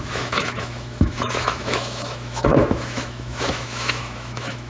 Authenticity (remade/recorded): remade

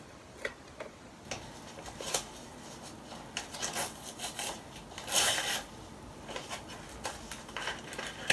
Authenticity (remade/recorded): recorded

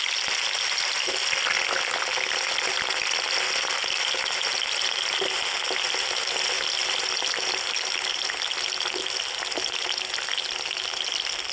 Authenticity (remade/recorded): recorded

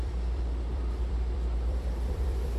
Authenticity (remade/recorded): remade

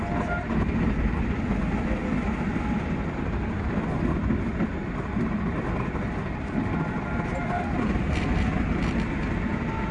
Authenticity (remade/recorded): recorded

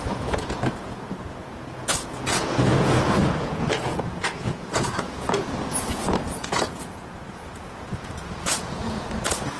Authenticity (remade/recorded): remade